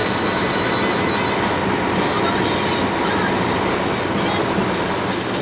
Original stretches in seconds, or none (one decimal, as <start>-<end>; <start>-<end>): 1.2-5.4